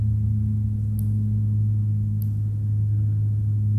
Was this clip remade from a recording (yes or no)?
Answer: no